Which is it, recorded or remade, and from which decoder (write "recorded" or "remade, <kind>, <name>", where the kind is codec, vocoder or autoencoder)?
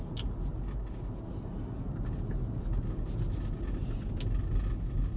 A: recorded